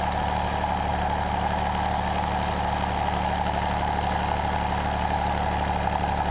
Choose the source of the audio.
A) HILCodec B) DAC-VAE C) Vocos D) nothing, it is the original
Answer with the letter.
D